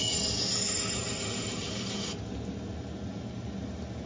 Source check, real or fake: real